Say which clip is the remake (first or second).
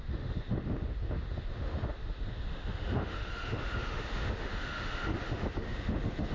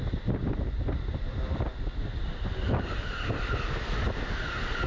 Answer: first